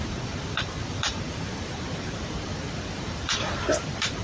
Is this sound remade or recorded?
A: remade